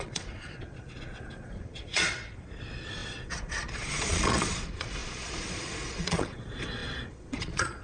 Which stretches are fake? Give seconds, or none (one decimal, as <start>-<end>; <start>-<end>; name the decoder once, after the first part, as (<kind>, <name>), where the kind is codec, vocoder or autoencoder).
0.0-7.8 (vocoder, Vocos)